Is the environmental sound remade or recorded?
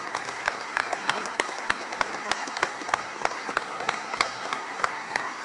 remade